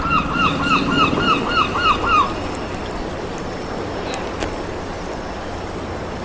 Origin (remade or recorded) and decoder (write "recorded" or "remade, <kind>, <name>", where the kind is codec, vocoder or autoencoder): recorded